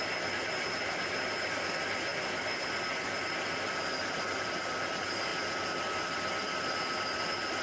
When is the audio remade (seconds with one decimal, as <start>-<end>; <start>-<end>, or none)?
0.0-2.1; 4.7-5.3; 5.9-7.6